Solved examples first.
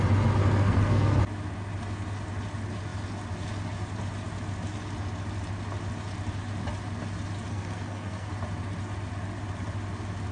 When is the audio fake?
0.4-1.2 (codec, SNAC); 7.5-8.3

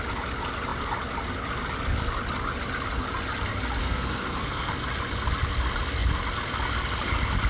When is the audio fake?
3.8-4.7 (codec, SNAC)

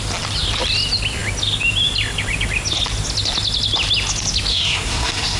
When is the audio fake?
4.5-5.4 (codec, SNAC)